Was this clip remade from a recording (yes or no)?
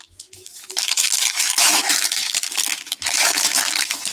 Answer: yes